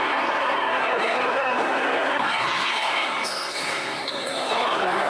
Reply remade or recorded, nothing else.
remade